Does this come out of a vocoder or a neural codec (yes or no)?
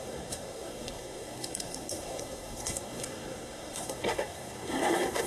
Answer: yes